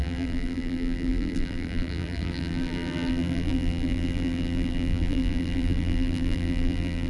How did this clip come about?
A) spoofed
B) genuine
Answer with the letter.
A